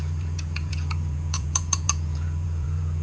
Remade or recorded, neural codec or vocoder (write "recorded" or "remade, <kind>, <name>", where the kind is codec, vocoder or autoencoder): remade, vocoder, Vocos